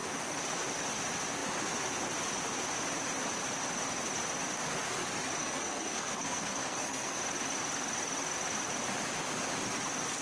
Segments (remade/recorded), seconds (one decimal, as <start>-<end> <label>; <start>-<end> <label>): 0.0-5.4 recorded; 5.4-7.2 remade; 7.2-10.2 recorded